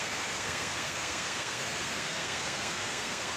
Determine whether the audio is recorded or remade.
remade